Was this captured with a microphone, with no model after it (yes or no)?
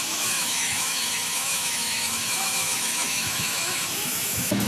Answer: no